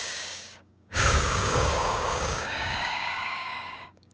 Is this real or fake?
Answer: fake